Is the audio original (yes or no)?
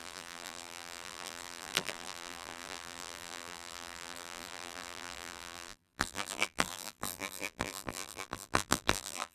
no